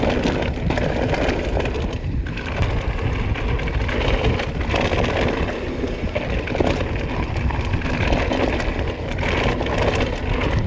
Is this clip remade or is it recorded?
recorded